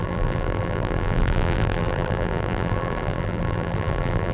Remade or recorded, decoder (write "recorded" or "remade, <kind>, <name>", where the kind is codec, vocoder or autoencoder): remade, vocoder, BigVGAN v2